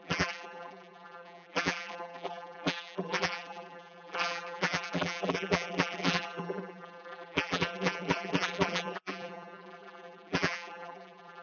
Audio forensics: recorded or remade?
remade